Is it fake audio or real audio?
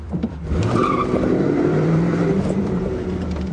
fake